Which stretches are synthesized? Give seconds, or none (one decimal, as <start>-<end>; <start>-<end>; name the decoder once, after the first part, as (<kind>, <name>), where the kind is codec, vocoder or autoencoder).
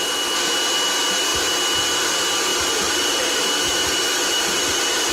2.5-5.1 (vocoder, BigVGAN v2)